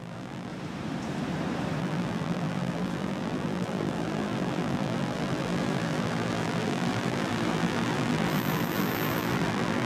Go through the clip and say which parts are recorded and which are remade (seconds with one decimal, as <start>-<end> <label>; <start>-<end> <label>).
0.0-0.5 remade; 0.5-1.8 recorded; 1.8-9.9 remade